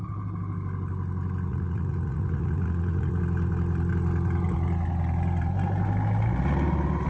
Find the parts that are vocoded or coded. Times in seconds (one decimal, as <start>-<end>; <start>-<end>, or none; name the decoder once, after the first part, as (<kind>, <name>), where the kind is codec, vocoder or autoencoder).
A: 1.5-3.1 (vocoder, Vocos)